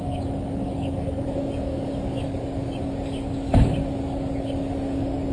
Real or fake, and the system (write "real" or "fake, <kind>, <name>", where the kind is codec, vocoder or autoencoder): fake, codec, DAC